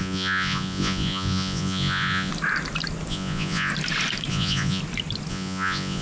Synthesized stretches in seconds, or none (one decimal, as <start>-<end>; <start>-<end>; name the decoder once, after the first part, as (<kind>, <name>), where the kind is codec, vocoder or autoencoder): 0.0-2.3 (vocoder, Vocos); 3.1-3.7; 4.3-4.8; 5.3-6.0